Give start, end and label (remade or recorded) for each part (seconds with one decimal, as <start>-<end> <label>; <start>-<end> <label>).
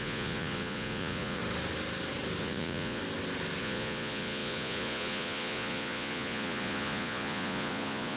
0.0-1.4 remade; 1.4-2.4 recorded; 2.4-3.0 remade; 3.0-3.6 recorded; 3.6-8.2 remade